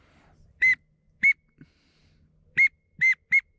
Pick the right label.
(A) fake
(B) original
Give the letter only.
B